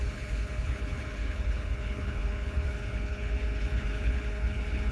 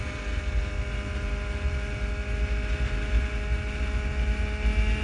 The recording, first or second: second